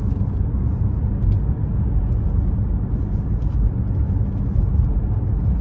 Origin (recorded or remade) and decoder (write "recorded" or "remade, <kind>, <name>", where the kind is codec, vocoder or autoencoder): recorded